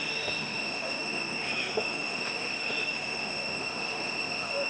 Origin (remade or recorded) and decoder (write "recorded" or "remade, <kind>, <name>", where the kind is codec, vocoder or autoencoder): remade, autoencoder, DAC-VAE